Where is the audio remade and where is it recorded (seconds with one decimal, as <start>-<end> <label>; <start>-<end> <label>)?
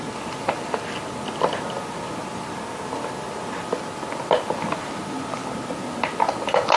0.0-6.8 recorded